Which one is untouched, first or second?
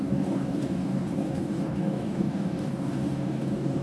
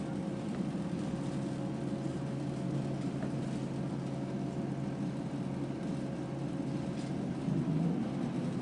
second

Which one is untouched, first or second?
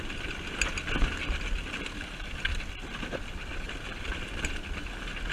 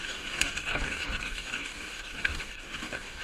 first